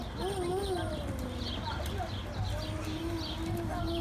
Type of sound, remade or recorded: recorded